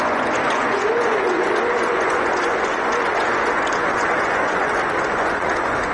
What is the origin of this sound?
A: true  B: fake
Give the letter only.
B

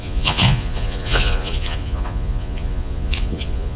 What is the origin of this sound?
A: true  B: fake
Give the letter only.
B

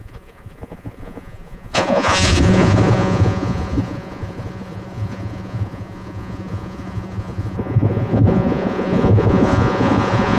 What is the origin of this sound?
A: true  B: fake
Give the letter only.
B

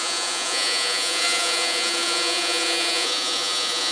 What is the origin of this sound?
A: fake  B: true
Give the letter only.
A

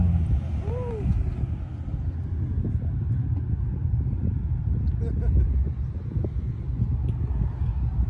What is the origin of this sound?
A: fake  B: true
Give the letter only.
B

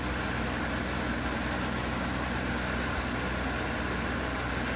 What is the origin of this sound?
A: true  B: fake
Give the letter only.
A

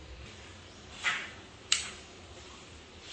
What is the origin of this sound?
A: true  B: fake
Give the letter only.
A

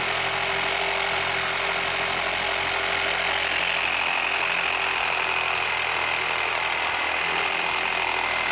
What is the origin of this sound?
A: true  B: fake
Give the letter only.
A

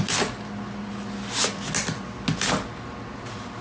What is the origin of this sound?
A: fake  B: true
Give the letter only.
B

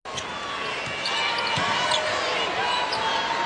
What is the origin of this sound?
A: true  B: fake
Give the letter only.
A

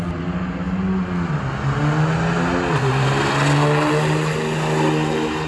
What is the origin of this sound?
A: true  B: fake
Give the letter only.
A